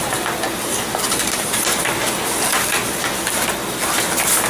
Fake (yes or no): no